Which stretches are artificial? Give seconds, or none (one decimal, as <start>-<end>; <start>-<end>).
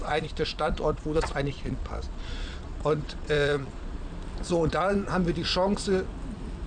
0.0-4.0; 4.5-5.1